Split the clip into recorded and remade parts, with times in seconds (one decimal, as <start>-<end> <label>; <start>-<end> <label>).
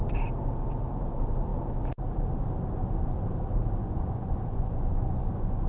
0.0-3.8 recorded; 3.8-5.7 remade